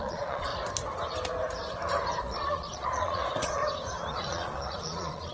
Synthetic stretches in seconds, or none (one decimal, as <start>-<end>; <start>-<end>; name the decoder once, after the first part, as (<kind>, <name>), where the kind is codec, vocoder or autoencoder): 0.0-0.5 (vocoder, Vocos); 2.2-3.6; 4.1-5.3